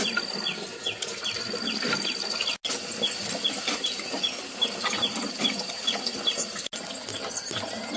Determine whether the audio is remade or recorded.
recorded